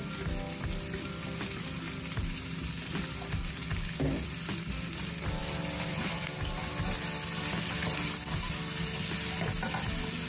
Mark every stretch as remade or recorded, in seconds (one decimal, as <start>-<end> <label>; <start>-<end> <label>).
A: 0.0-10.3 recorded

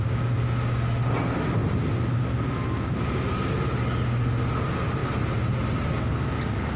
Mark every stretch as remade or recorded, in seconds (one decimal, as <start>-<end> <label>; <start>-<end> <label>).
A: 0.0-6.8 recorded

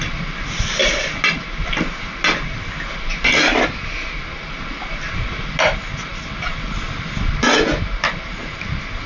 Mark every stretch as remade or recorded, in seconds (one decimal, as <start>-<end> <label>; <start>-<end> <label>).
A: 0.0-9.1 recorded

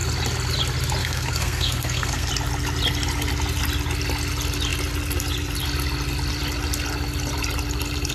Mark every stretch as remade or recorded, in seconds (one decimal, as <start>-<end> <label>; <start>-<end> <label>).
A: 0.0-1.0 recorded; 1.0-2.3 remade; 2.3-8.1 recorded

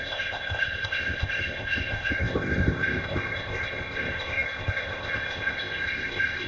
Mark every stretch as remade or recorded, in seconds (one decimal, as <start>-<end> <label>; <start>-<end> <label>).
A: 0.0-6.5 remade

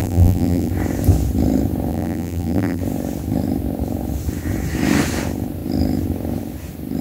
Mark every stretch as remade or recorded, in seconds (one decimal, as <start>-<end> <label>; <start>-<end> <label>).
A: 0.0-0.7 remade; 0.7-1.9 recorded; 1.9-2.8 remade; 2.8-7.0 recorded

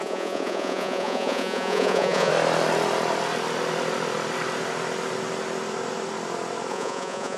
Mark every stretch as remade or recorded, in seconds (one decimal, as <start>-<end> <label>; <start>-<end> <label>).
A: 0.0-2.3 remade; 2.3-6.7 recorded; 6.7-7.4 remade